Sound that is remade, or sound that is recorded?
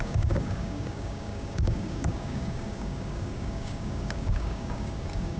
remade